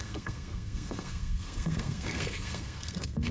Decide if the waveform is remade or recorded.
remade